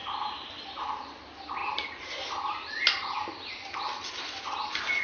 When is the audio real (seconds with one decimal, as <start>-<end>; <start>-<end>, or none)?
0.0-5.0